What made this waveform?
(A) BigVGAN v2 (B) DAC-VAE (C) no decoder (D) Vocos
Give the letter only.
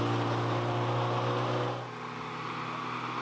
C